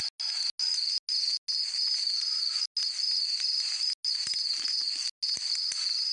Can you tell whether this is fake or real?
real